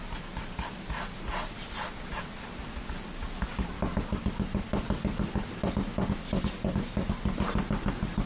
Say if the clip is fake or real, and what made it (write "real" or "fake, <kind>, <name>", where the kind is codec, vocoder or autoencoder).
real